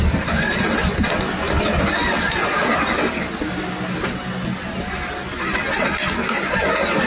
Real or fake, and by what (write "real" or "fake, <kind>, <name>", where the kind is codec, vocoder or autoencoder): real